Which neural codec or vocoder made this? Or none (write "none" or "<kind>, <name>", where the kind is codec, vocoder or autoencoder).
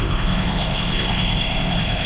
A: codec, ZipCodec